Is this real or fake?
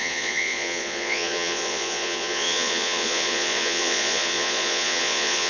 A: fake